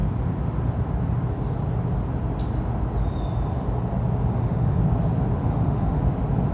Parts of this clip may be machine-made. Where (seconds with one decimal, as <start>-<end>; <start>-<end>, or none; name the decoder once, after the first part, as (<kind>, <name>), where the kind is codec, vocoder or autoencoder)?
4.3-4.8 (autoencoder, DAC-VAE); 5.4-6.0